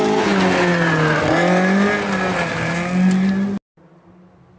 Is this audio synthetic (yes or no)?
no